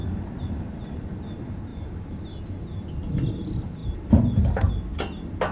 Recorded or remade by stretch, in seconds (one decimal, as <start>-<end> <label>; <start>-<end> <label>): 0.0-0.5 remade; 0.5-1.7 recorded; 1.7-2.2 remade; 2.2-3.8 recorded; 3.8-4.7 remade; 4.7-5.5 recorded